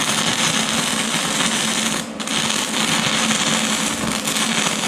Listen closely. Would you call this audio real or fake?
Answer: real